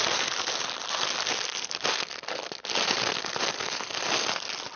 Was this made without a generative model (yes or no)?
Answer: yes